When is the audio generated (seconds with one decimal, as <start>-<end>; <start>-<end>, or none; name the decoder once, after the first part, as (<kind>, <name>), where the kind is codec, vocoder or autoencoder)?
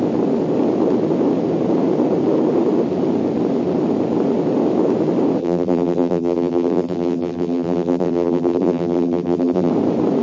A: 5.4-9.7 (vocoder, BigVGAN v2)